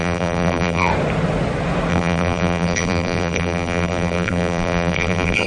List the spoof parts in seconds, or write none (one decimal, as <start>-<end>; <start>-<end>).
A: 0.0-0.9; 1.9-5.5